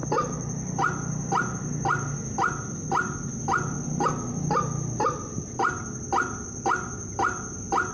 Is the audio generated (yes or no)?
no